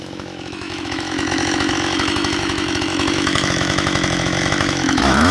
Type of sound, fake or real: fake